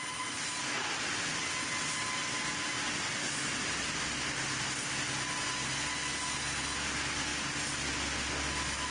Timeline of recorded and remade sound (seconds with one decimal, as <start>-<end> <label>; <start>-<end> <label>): 0.0-8.9 recorded